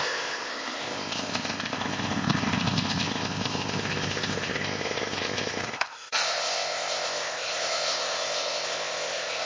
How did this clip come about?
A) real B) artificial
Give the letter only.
B